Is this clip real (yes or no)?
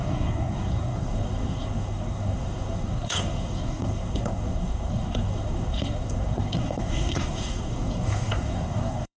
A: no